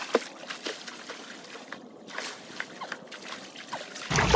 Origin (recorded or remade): recorded